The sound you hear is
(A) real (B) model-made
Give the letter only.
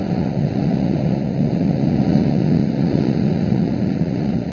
B